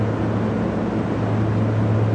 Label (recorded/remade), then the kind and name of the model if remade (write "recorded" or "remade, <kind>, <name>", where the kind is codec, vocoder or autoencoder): recorded